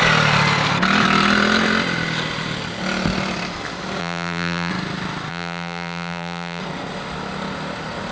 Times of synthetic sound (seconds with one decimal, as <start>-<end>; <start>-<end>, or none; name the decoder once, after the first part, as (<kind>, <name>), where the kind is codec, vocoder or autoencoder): 4.0-4.7 (vocoder, BigVGAN v2); 5.3-6.6